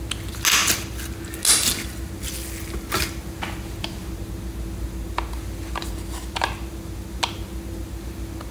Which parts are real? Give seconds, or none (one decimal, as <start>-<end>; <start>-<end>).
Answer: 0.0-8.5